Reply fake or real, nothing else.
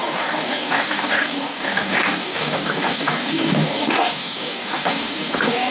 fake